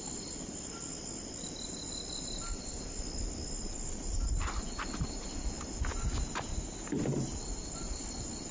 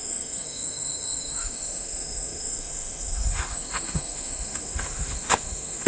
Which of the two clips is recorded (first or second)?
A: first